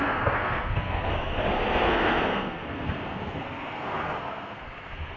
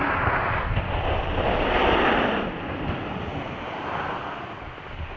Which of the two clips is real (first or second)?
second